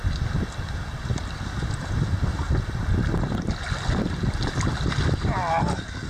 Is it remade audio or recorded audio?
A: recorded